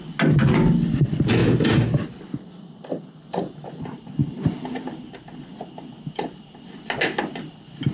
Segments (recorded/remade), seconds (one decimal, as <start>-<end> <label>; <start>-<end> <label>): 0.0-7.9 recorded